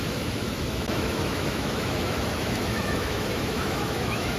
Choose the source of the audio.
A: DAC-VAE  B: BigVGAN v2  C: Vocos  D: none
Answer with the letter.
A